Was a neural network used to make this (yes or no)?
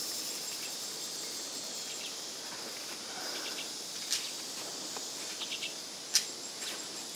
no